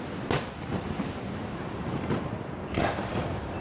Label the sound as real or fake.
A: real